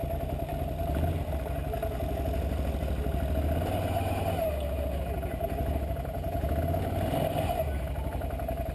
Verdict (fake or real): real